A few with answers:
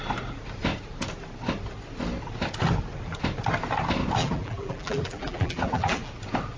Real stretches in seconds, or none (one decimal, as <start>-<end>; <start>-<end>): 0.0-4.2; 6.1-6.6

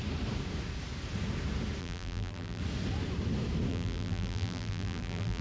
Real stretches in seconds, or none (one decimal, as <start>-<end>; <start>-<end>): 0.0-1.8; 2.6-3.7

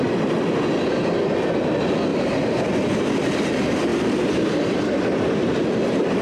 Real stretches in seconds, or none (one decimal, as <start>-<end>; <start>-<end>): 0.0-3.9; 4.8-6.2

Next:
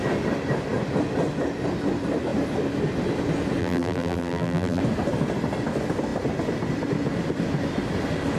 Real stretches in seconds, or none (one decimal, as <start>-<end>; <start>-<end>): 0.0-3.6; 4.8-8.4

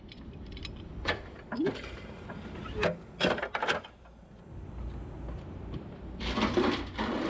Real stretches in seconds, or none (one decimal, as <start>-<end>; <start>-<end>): 2.8-5.5

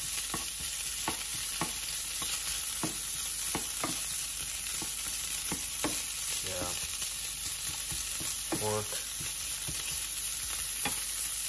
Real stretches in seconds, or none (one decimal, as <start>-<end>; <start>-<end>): 0.7-1.3; 3.1-5.1; 7.9-11.5